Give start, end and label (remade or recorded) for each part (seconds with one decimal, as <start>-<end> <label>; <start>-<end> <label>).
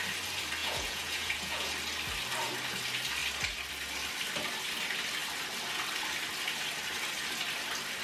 0.0-0.6 recorded; 0.6-1.7 remade; 1.7-8.0 recorded